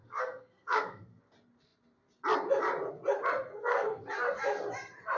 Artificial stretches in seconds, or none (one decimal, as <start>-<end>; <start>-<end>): 0.0-1.2; 3.5-4.0